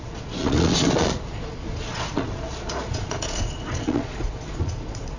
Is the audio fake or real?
fake